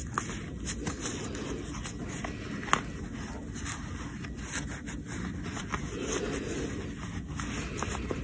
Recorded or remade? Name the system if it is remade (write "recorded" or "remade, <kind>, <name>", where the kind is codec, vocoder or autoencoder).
recorded